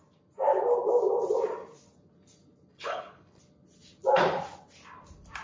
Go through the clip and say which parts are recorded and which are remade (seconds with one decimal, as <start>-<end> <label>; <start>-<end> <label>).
0.0-2.7 recorded; 2.7-3.4 remade; 3.4-5.4 recorded